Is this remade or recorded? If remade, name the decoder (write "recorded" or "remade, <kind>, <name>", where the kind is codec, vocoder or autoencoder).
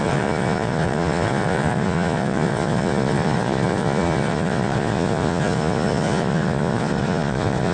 remade, vocoder, Vocos